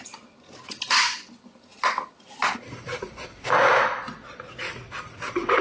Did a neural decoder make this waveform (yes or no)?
no